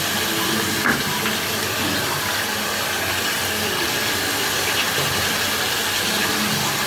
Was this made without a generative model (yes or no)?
yes